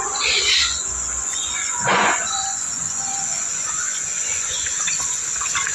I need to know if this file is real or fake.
fake